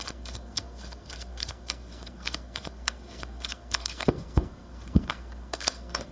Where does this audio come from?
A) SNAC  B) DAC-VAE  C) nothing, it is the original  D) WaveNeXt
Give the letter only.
A